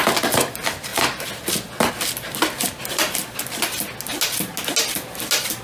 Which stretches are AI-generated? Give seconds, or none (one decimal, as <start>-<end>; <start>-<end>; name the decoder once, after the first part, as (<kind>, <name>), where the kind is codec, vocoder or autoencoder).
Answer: none